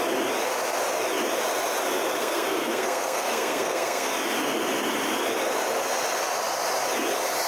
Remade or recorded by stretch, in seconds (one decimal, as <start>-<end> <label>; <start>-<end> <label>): 0.0-2.2 recorded; 2.2-4.1 remade; 4.1-7.5 recorded

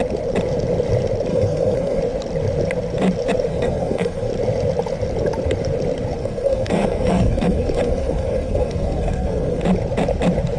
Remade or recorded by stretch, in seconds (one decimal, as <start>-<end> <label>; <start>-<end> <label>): 0.0-1.3 recorded; 1.3-2.0 remade; 2.0-3.5 recorded; 3.5-4.3 remade; 4.3-6.2 recorded; 6.2-9.6 remade; 9.6-10.6 recorded

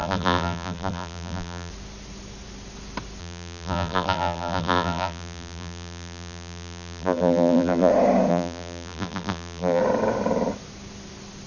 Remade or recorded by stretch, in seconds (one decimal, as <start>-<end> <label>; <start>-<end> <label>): 0.0-1.7 remade; 1.7-3.2 recorded; 3.2-7.9 remade; 7.9-8.3 recorded; 8.3-9.8 remade; 9.8-11.5 recorded

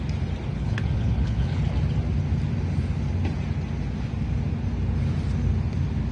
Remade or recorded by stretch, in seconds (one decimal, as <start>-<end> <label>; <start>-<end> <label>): 0.0-0.5 recorded; 0.5-1.6 remade; 1.6-6.1 recorded

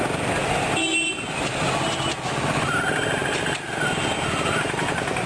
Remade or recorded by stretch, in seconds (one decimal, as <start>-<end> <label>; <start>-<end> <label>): 0.0-5.3 recorded

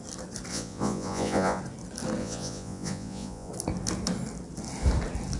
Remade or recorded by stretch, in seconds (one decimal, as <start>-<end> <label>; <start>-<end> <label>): 0.0-0.5 recorded; 0.5-1.6 remade; 1.6-2.2 recorded; 2.2-3.5 remade; 3.5-5.4 recorded

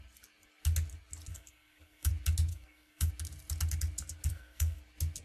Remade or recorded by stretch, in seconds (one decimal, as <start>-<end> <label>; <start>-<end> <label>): 0.0-1.3 recorded; 1.3-2.1 remade; 2.1-2.5 recorded; 2.5-3.1 remade; 3.1-4.3 recorded; 4.3-4.8 remade; 4.8-5.2 recorded

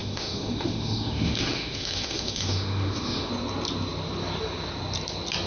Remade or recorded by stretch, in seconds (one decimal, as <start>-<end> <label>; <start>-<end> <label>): 0.0-3.3 remade; 3.3-5.5 recorded